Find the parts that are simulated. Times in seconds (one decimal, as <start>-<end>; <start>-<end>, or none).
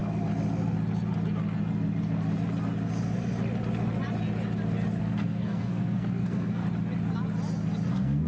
5.0-6.6; 7.9-8.3